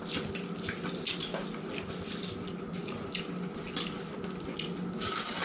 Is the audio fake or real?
real